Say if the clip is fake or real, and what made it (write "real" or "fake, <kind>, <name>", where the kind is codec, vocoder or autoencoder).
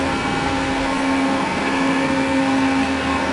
fake, codec, SNAC